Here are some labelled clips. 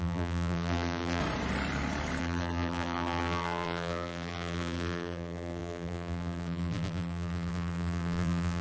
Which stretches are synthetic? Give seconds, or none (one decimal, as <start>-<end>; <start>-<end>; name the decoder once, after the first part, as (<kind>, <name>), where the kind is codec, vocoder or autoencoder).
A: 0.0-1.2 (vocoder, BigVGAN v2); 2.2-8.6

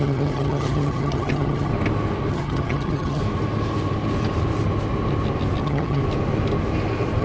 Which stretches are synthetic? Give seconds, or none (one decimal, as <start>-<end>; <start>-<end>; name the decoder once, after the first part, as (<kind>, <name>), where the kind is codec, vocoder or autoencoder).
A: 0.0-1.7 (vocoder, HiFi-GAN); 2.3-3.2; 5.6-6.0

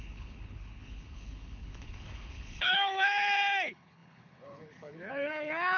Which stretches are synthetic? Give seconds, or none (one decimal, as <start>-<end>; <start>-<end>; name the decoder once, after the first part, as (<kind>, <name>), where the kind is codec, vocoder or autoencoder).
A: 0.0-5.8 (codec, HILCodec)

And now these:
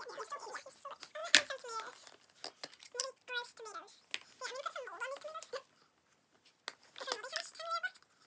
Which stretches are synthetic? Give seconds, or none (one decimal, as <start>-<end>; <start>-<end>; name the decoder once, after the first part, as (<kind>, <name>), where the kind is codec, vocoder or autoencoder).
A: none

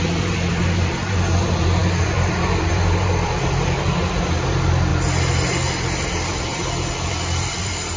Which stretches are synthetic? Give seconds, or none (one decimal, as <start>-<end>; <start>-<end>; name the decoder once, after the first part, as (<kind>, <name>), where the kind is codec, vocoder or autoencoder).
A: 0.0-4.9 (vocoder, BigVGAN v2); 6.1-8.0

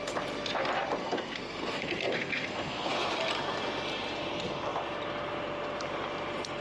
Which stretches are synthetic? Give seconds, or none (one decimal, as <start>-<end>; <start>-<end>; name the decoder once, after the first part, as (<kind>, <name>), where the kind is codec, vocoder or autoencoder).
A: 1.0-2.9 (codec, SNAC)

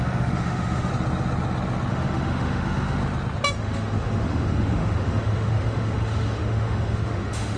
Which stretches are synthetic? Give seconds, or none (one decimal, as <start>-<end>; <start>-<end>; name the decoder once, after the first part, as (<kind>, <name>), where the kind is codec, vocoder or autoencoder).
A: 0.0-0.9 (autoencoder, DAC-VAE); 1.9-3.0; 3.6-7.6